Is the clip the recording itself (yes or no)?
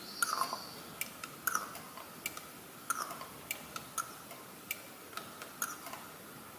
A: yes